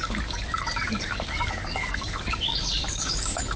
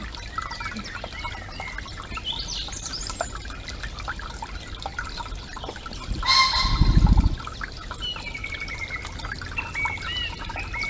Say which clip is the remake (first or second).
first